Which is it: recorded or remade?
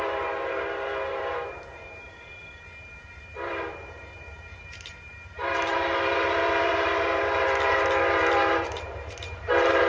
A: remade